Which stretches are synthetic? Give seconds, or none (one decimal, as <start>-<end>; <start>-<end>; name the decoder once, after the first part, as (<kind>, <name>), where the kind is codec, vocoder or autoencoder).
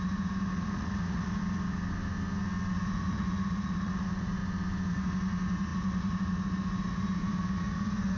0.0-1.4 (vocoder, Vocos); 2.7-4.4; 4.9-8.2